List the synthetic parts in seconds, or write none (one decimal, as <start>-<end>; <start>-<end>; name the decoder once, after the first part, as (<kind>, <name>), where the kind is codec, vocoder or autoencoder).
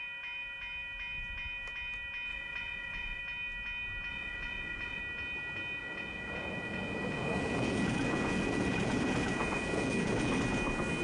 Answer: 2.3-3.2 (vocoder, Vocos); 4.1-5.0; 5.8-10.4